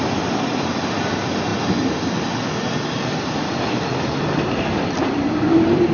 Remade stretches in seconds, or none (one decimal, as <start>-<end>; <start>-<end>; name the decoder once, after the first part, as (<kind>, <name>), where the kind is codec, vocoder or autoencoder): 0.0-1.5 (vocoder, BigVGAN v2); 3.4-5.9